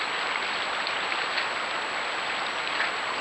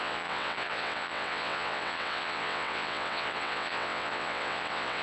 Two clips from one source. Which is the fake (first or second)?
second